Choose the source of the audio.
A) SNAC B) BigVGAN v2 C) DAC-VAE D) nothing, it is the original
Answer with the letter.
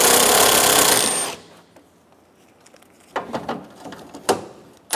D